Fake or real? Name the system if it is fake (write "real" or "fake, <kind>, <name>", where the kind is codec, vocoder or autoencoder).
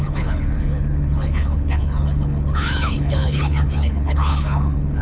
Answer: fake, codec, HILCodec